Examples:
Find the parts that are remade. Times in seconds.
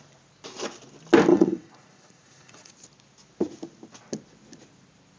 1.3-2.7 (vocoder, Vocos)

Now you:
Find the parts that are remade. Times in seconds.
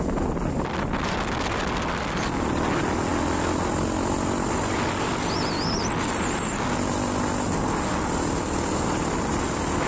none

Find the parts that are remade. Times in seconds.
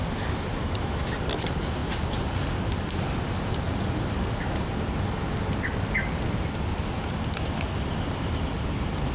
0.6-1.1 (autoencoder, DAC-VAE)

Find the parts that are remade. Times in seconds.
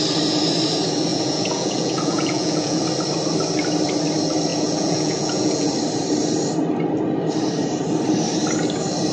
1.1-2.8 (vocoder, Vocos); 4.5-5.7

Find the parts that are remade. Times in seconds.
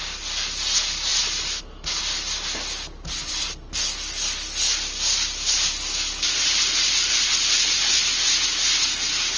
none